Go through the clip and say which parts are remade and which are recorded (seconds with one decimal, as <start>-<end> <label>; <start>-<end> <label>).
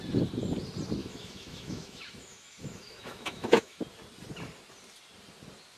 0.0-1.0 recorded; 1.0-3.8 remade; 3.8-5.8 recorded